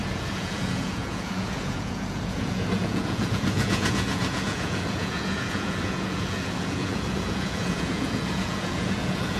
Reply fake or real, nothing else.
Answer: fake